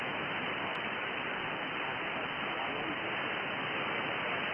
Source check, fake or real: real